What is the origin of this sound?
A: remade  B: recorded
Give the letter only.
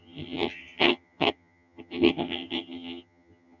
A